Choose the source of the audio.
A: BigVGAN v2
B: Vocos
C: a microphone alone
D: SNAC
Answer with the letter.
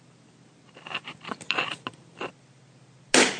C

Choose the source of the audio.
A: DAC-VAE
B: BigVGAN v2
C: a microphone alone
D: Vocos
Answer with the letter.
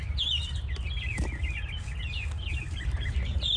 C